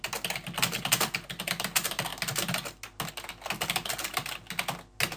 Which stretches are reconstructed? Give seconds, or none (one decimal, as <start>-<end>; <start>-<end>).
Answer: none